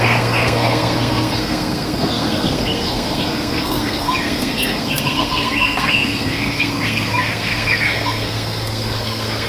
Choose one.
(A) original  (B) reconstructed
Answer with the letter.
B